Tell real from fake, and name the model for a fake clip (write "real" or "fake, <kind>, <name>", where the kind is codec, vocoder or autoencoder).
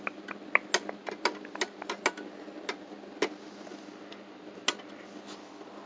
real